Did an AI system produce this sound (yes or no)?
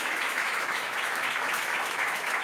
yes